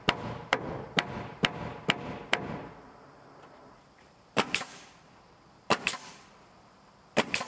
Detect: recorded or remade remade